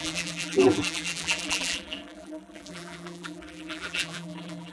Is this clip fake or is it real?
fake